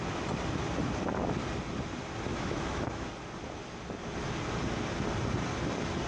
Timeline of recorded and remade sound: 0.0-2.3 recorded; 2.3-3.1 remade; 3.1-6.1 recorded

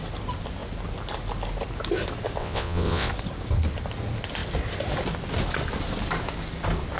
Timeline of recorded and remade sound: 0.0-2.4 recorded; 2.4-3.1 remade; 3.1-7.0 recorded

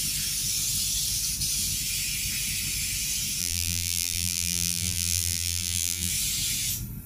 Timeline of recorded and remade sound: 0.0-3.4 recorded; 3.4-6.1 remade; 6.1-7.1 recorded

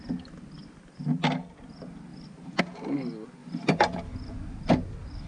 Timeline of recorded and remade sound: 0.0-5.3 recorded

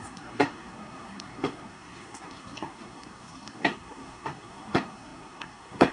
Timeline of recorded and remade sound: 0.0-5.9 remade